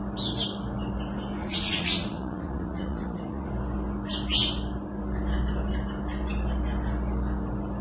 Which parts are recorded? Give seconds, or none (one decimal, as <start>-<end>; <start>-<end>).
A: 0.0-1.4; 3.5-7.8